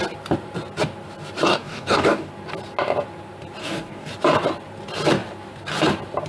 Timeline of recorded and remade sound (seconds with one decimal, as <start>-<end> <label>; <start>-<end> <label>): 0.0-1.5 recorded; 1.5-2.3 remade; 2.3-3.6 recorded; 3.6-4.1 remade; 4.1-6.3 recorded